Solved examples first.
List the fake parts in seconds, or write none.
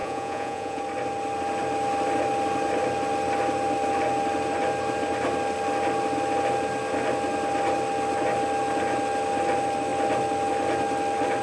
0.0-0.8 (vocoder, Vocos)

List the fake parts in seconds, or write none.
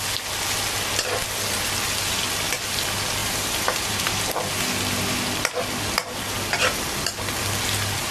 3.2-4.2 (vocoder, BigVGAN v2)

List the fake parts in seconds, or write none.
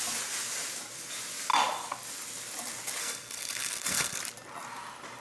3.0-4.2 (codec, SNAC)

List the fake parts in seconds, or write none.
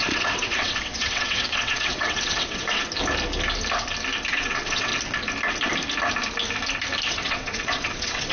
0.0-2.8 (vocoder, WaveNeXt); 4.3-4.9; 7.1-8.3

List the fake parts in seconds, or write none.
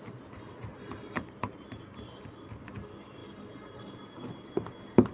0.7-1.8 (vocoder, BigVGAN v2)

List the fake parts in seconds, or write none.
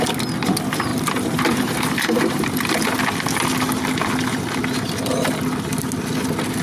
0.9-2.7 (vocoder, BigVGAN v2)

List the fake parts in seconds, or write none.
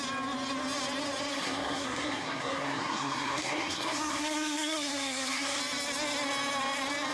1.3-5.6 (codec, SNAC)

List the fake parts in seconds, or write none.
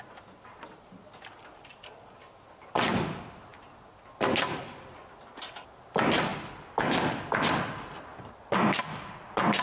6.3-7.4 (vocoder, BigVGAN v2)